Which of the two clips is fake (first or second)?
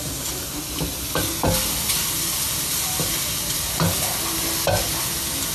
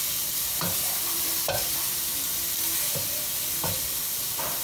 second